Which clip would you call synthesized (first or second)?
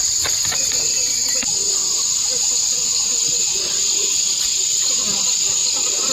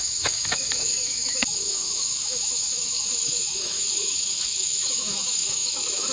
second